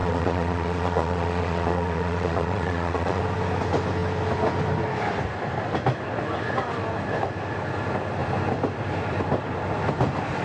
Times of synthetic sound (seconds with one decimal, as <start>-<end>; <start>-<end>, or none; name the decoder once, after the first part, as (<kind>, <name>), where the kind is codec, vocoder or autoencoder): 0.0-3.2 (vocoder, Vocos)